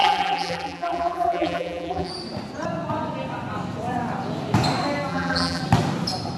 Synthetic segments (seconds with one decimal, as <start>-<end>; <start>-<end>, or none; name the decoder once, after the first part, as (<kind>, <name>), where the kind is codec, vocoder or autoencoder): 0.0-2.1 (vocoder, BigVGAN v2); 5.1-5.6